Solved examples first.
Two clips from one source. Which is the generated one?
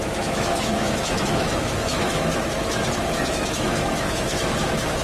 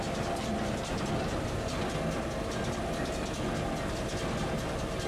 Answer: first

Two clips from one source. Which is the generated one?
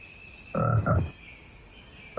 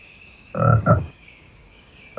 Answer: second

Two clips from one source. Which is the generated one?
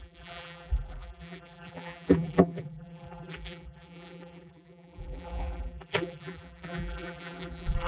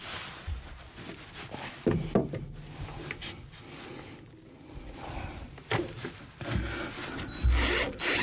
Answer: first